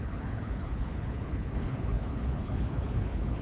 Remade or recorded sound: remade